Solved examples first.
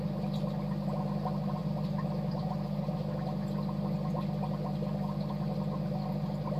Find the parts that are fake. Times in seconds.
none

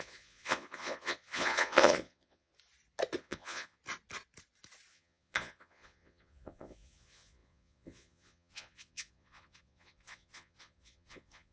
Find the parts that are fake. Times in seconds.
0.0-2.5 (vocoder, Vocos); 3.2-3.8; 4.9-11.5

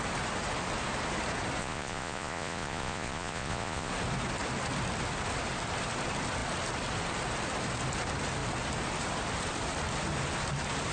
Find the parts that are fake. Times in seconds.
1.6-3.9 (vocoder, Vocos)

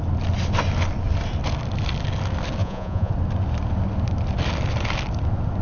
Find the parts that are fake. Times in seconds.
2.6-3.1 (vocoder, Vocos)

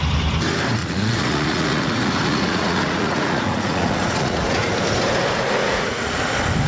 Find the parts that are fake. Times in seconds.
0.8-4.7 (vocoder, Vocos); 5.6-6.2